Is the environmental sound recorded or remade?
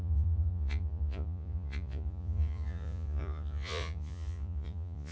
remade